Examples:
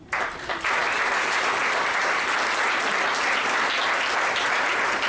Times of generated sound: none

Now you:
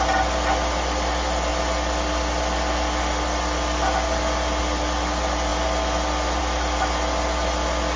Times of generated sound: none

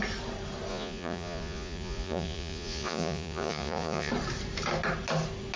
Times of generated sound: 0.7-4.1